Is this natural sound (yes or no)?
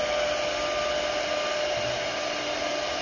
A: yes